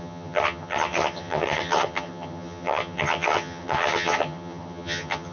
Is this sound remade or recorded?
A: remade